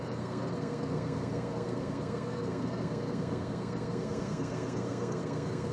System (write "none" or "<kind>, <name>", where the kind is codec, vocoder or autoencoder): codec, SNAC